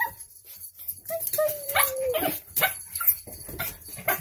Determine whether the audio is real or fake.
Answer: fake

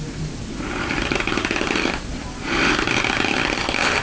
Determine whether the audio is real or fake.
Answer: fake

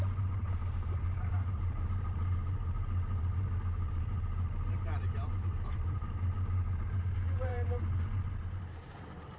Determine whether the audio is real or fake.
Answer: fake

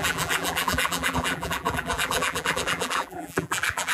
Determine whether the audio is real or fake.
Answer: fake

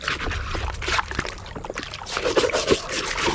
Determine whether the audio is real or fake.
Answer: real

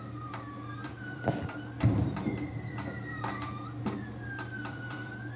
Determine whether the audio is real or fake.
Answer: fake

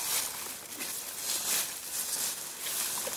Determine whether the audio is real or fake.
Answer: real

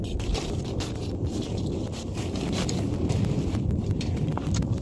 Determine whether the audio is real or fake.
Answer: fake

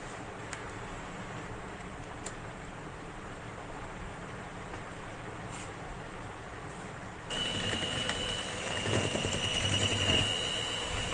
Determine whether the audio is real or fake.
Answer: fake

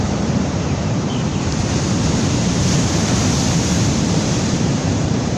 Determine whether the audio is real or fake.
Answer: fake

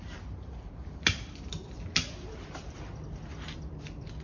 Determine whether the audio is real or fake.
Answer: real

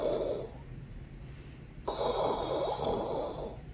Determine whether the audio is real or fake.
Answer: fake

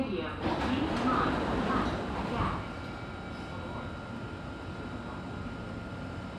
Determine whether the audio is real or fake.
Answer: real